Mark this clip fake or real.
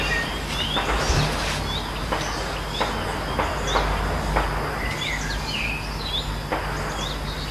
real